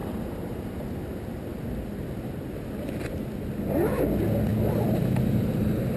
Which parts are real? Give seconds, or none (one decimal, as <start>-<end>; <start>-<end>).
0.6-6.0